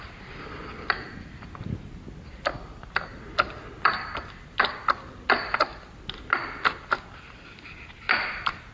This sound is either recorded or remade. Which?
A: recorded